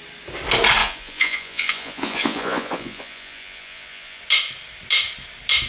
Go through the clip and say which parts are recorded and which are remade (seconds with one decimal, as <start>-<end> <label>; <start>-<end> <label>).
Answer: 0.0-0.8 recorded; 0.8-4.2 remade; 4.2-5.7 recorded